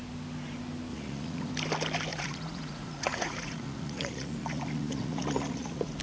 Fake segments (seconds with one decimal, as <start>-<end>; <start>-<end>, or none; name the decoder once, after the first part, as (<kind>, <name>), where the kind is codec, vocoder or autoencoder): 0.9-1.5 (vocoder, Vocos); 2.1-6.0